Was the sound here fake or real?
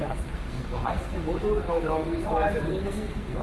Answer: fake